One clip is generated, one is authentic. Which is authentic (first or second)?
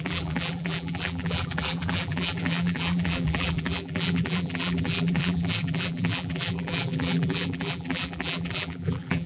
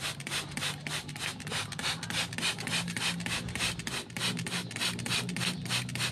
second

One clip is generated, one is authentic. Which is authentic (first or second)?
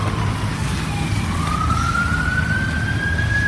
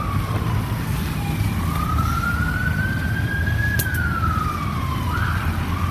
first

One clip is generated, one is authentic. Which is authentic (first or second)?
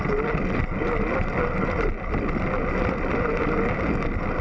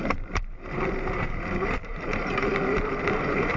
first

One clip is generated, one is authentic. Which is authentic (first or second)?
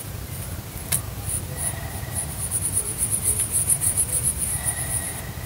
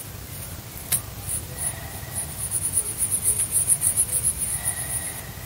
second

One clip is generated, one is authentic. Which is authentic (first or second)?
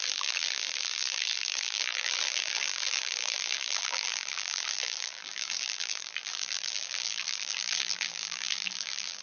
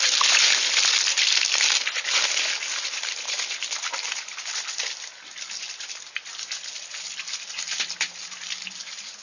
second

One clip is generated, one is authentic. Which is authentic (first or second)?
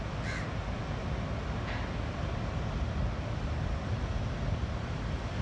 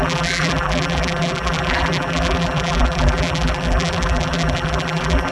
first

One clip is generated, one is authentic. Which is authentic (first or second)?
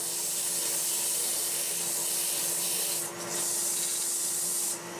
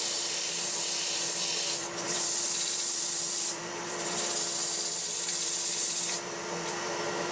first